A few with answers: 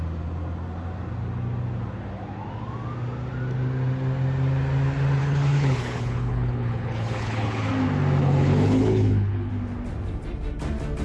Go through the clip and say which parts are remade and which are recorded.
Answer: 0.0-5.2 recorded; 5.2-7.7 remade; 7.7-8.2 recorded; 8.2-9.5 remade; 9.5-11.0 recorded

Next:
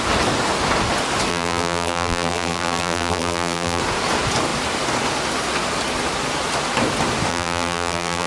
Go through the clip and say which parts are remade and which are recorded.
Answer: 0.0-1.3 recorded; 1.3-3.8 remade; 3.8-7.3 recorded; 7.3-8.3 remade

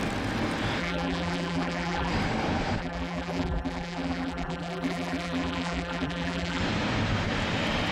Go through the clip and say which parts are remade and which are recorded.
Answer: 0.0-0.8 recorded; 0.8-2.1 remade; 2.1-2.8 recorded; 2.8-6.6 remade; 6.6-7.9 recorded

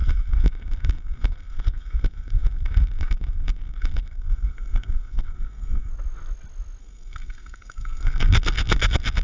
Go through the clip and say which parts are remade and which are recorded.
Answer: 0.0-5.9 remade; 5.9-6.8 recorded; 6.8-9.2 remade

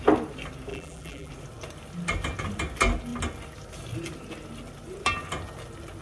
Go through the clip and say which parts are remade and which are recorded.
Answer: 0.0-0.7 recorded; 0.7-1.3 remade; 1.3-6.0 recorded

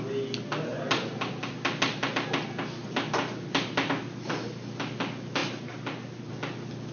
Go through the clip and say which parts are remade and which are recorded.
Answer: 0.0-6.9 recorded

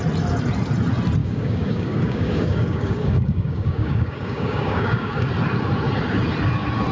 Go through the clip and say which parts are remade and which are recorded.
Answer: 0.0-1.2 recorded; 1.2-5.3 remade; 5.3-6.9 recorded